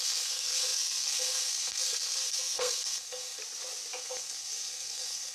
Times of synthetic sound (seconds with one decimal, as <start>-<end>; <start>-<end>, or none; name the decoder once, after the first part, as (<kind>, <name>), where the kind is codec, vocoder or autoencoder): 0.0-3.4 (codec, SNAC); 4.0-5.3